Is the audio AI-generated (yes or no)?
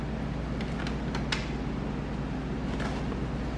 no